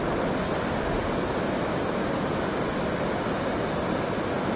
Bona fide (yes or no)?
yes